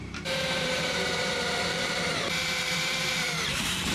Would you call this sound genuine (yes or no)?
no